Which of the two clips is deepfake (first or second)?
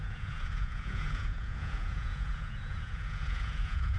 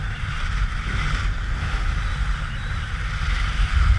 first